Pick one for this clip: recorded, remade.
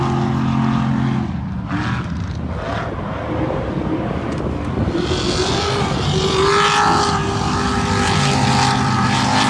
recorded